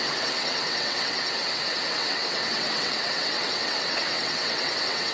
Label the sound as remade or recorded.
remade